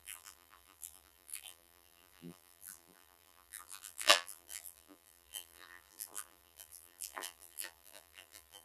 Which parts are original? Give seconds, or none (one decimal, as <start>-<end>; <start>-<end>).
none